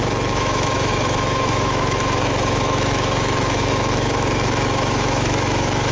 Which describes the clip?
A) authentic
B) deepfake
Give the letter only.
B